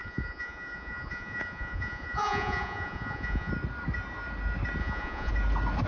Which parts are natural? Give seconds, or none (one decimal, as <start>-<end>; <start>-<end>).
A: 3.5-4.8; 5.3-5.9